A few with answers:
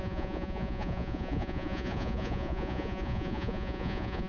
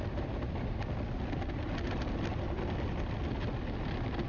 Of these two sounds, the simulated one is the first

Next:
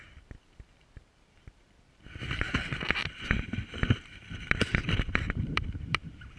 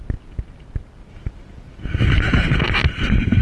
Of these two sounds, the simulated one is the first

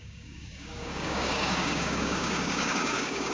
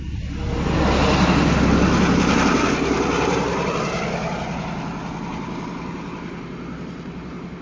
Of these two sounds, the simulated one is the first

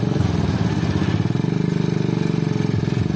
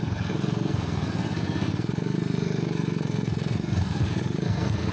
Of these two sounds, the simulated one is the second